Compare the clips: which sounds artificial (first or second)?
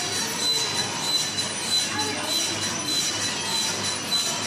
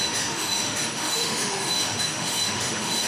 second